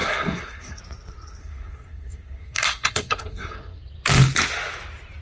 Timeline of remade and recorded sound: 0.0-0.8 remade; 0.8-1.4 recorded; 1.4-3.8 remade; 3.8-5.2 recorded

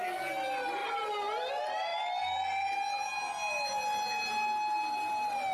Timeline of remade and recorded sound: 0.0-0.8 recorded; 0.8-1.5 remade; 1.5-5.5 recorded

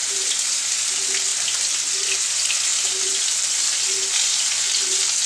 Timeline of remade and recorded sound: 0.0-5.3 recorded

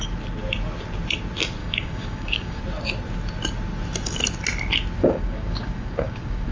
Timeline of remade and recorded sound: 0.0-1.6 recorded; 1.6-2.6 remade; 2.6-5.0 recorded; 5.0-6.5 remade

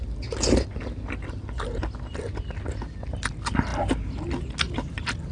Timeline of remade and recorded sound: 0.0-5.3 recorded

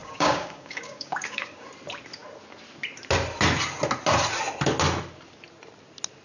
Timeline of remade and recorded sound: 0.0-1.7 remade; 1.7-6.2 recorded

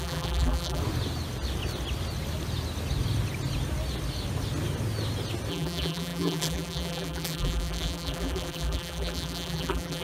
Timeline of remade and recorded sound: 0.0-0.8 remade; 0.8-5.5 recorded; 5.5-10.0 remade

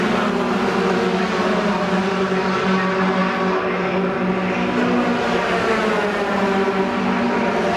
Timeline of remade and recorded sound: 0.0-7.8 recorded